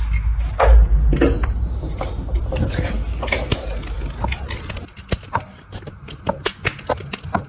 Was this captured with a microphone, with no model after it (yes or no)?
yes